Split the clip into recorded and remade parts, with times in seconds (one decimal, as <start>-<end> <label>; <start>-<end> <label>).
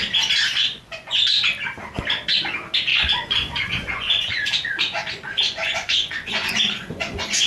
0.0-0.5 recorded; 0.5-1.2 remade; 1.2-2.9 recorded; 2.9-7.5 remade